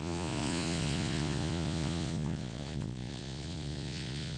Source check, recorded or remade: remade